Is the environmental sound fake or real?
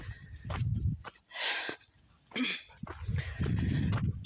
real